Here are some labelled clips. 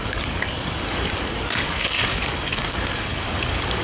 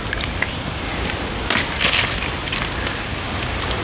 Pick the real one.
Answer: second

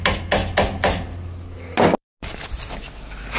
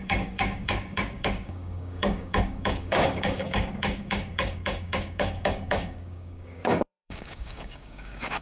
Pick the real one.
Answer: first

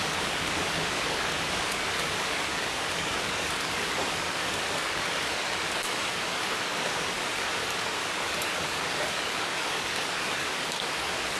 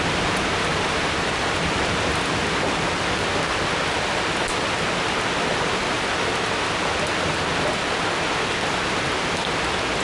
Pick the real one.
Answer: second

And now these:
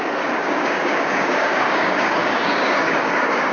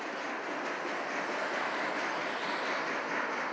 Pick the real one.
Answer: second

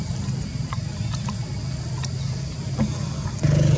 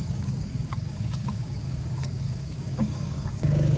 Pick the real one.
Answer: first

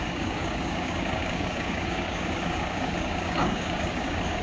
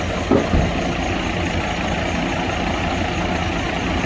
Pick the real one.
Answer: second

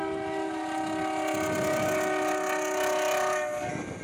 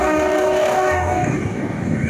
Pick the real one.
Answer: first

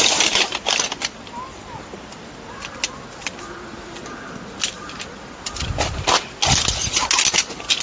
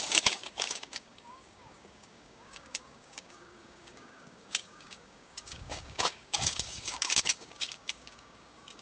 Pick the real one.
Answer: first